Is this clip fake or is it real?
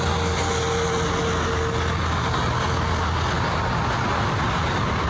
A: real